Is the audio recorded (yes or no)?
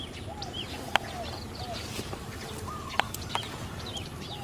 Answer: yes